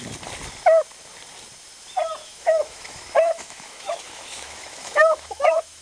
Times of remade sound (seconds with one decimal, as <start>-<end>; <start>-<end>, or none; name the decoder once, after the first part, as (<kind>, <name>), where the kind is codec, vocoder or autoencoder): 2.2-5.8 (autoencoder, DAC-VAE)